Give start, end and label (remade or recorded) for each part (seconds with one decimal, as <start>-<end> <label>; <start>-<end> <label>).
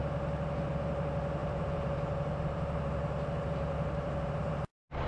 0.0-1.4 recorded; 1.4-4.5 remade; 4.5-5.1 recorded